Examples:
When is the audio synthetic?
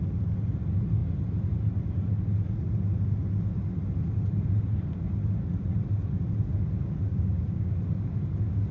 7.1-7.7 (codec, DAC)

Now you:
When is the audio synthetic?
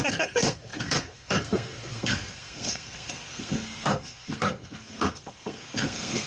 0.0-6.3 (codec, SNAC)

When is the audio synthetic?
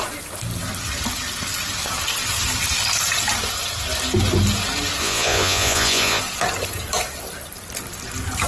5.0-6.2 (vocoder, Vocos)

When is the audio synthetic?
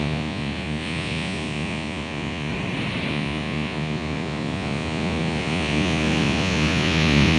0.0-2.5 (vocoder, Vocos); 3.1-7.4